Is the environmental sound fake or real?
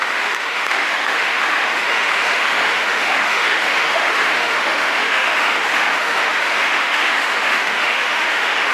fake